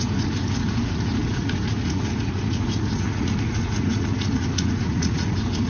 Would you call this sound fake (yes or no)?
yes